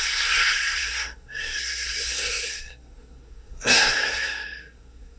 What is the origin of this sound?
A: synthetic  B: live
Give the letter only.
A